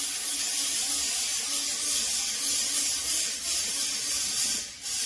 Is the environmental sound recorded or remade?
recorded